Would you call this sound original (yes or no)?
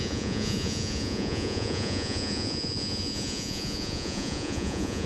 no